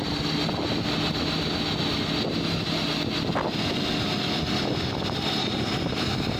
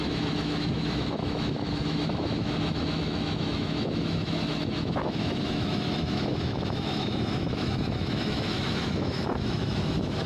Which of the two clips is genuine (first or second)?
first